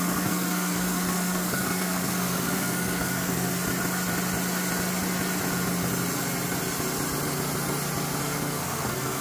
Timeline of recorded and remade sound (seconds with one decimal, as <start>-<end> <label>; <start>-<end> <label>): 0.0-3.5 remade; 3.5-8.2 recorded; 8.2-9.2 remade